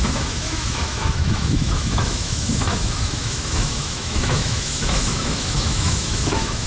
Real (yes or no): no